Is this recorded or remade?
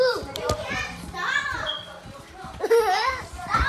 recorded